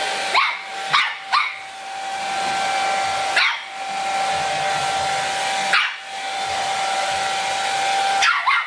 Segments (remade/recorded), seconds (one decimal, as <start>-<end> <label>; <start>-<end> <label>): 0.0-8.7 recorded